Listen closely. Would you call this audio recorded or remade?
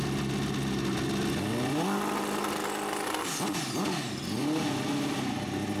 recorded